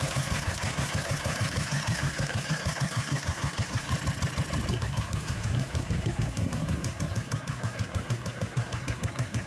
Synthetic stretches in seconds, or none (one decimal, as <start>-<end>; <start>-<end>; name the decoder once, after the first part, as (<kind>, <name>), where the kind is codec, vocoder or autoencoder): 0.0-3.9 (codec, SNAC); 4.7-9.5